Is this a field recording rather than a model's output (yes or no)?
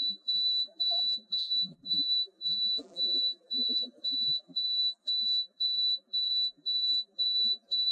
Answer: no